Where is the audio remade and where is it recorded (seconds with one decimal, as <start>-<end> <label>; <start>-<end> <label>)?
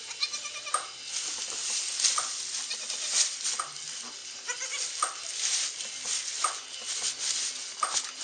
0.0-8.2 recorded